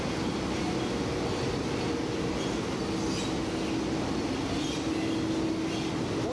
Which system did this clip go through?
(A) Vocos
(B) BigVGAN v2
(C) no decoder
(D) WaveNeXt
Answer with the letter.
C